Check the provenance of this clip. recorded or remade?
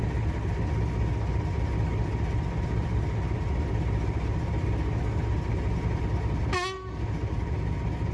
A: recorded